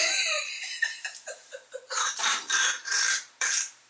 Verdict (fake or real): fake